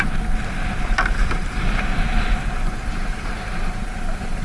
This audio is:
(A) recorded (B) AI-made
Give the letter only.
A